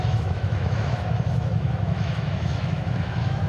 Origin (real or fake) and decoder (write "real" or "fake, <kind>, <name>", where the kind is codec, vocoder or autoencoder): fake, autoencoder, DAC-VAE